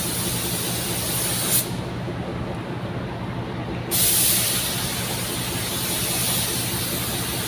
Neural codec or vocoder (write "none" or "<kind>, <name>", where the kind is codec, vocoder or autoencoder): none